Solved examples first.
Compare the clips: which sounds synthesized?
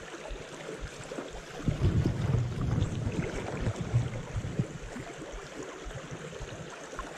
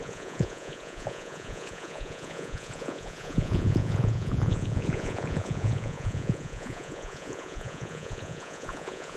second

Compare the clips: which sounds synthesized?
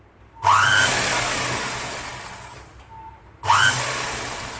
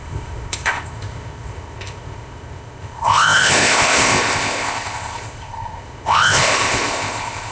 second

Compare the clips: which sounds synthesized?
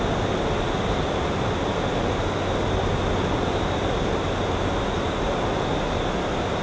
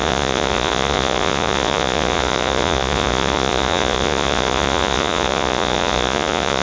second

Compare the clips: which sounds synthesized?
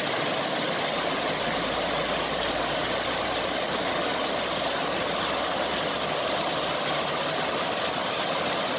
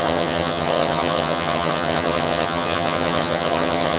second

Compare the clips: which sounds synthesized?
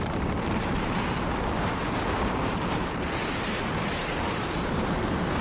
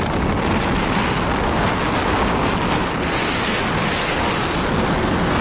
first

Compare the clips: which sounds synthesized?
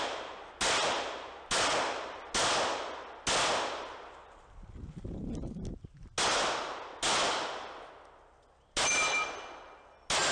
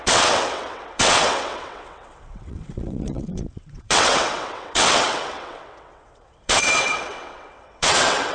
second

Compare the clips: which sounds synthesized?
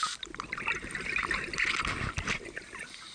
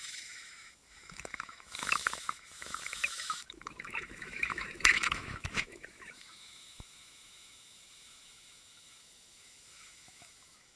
second